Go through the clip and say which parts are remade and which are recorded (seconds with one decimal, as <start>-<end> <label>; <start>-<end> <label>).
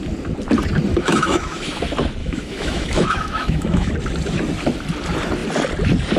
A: 0.0-0.9 recorded; 0.9-1.8 remade; 1.8-2.2 recorded; 2.2-3.9 remade; 3.9-6.2 recorded